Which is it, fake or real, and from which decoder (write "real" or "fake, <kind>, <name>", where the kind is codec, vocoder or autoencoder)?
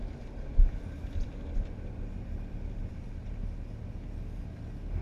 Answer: real